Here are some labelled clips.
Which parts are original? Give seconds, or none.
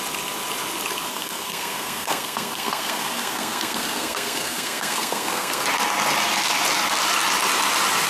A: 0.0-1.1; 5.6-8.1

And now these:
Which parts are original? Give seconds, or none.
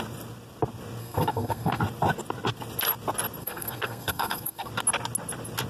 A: 0.0-1.0; 1.8-3.4; 4.7-5.7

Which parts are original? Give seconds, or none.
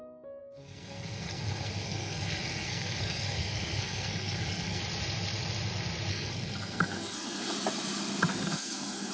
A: 0.0-0.4; 4.8-6.1; 7.5-8.3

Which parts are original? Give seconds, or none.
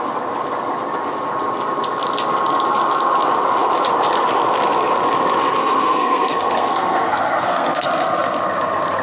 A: 0.0-5.6; 7.9-9.0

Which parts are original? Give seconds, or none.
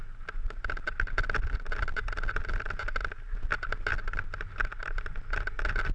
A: 0.0-5.9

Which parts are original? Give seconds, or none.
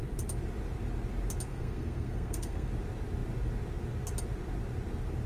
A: 0.0-1.5; 2.7-5.3